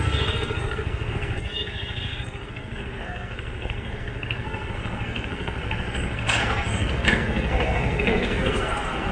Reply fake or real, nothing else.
fake